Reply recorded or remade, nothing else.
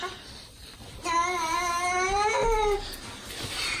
recorded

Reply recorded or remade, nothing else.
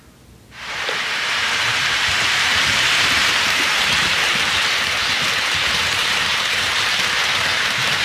remade